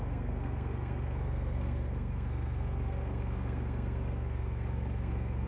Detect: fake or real fake